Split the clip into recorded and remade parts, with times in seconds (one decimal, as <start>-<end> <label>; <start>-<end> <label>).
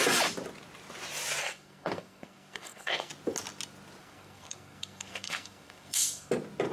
0.0-1.4 recorded; 1.4-3.1 remade; 3.1-4.0 recorded; 4.0-6.3 remade; 6.3-6.7 recorded